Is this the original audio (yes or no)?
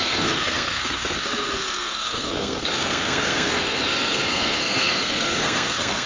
no